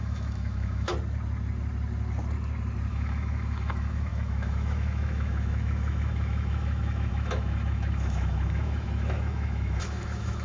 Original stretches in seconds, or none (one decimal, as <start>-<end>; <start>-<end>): 0.9-2.9

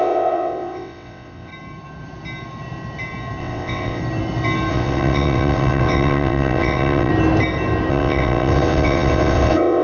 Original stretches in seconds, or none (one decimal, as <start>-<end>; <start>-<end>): 1.5-3.4; 4.0-4.7; 7.1-7.9

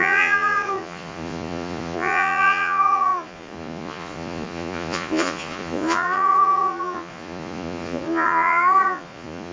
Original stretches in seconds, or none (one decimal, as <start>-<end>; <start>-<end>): none

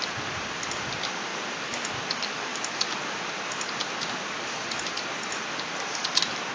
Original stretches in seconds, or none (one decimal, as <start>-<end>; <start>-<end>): 0.0-6.5

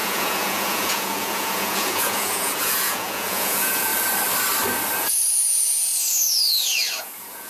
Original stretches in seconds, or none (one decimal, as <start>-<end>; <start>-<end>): 3.9-5.0; 5.9-7.0